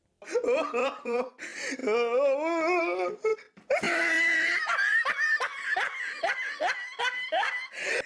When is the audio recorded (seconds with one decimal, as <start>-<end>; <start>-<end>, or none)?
0.0-0.8; 1.3-8.1